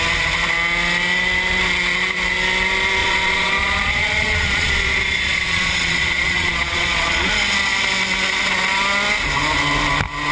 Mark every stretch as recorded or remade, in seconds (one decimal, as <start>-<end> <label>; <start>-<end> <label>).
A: 0.0-3.0 recorded; 3.0-7.3 remade; 7.3-10.3 recorded